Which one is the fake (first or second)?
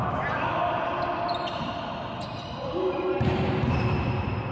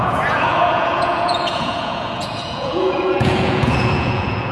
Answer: second